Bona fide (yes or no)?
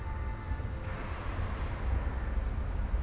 yes